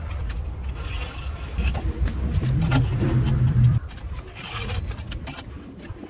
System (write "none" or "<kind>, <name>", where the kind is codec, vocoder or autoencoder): none